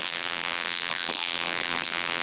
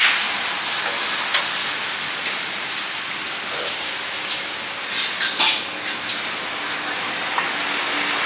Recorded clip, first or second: second